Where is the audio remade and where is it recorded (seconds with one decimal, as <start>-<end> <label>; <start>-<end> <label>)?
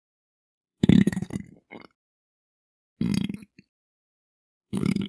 0.0-1.3 remade; 1.3-4.4 recorded; 4.4-5.1 remade